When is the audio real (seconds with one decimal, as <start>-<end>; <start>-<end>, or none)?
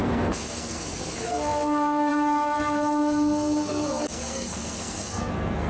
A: none